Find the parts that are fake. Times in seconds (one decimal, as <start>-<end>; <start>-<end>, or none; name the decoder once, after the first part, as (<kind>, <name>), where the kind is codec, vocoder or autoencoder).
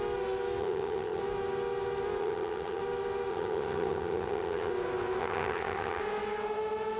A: 0.6-1.2 (vocoder, HiFi-GAN); 2.2-2.8; 3.3-4.7; 5.2-6.0